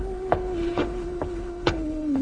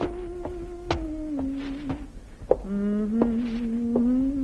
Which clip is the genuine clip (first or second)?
second